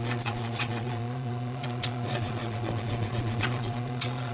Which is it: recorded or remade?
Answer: remade